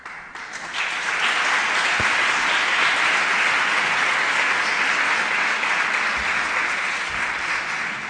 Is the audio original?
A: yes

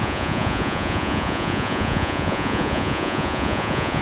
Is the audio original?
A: no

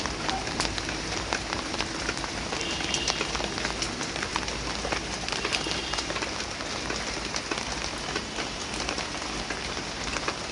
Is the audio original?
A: yes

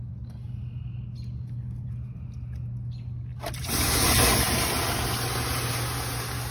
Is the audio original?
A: yes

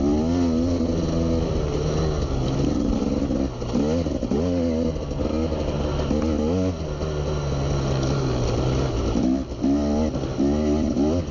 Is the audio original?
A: yes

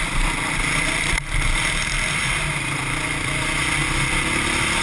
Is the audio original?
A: yes